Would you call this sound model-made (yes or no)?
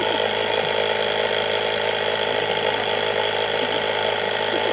no